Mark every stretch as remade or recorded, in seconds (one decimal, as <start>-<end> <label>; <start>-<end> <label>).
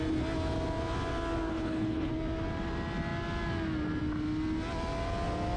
0.0-1.5 recorded; 1.5-2.1 remade; 2.1-5.6 recorded